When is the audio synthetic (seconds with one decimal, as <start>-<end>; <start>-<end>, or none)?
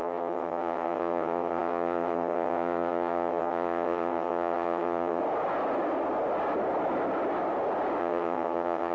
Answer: 0.0-5.2; 8.0-8.9